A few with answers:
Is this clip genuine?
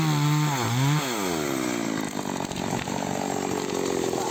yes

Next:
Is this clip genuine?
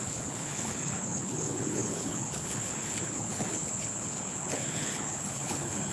no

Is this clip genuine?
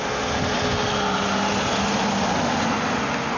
yes